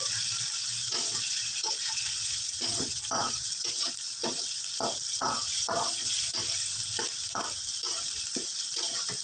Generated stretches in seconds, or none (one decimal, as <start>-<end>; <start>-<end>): 0.8-3.9; 5.2-6.3